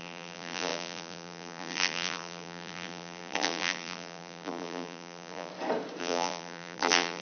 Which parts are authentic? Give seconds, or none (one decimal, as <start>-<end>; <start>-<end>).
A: 5.5-6.0